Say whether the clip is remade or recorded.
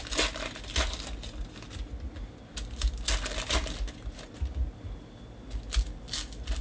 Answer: recorded